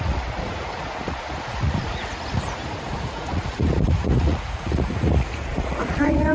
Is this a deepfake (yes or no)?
yes